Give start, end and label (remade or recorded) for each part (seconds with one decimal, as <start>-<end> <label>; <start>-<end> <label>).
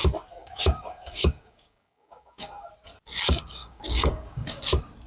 0.0-0.4 recorded; 0.4-2.7 remade; 2.7-3.6 recorded; 3.6-4.6 remade; 4.6-5.1 recorded